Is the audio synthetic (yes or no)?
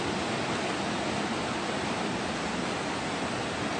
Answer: no